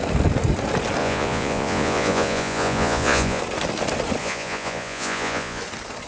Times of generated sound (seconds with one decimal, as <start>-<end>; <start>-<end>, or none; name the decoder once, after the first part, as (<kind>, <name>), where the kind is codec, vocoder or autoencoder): 1.0-3.4 (vocoder, Vocos); 4.2-5.6